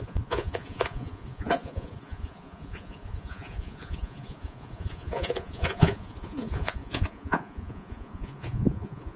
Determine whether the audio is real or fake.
fake